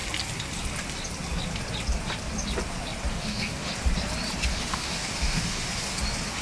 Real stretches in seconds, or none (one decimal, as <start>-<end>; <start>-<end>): 0.0-3.1; 3.7-4.5; 5.7-6.4